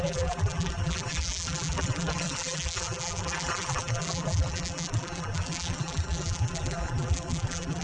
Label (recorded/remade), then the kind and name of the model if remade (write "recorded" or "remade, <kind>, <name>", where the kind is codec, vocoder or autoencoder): remade, vocoder, BigVGAN v2